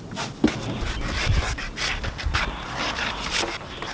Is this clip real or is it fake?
real